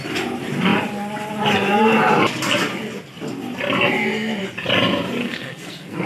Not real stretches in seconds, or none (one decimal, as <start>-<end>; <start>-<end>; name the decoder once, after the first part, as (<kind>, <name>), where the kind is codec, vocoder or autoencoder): 5.2-6.1 (codec, SNAC)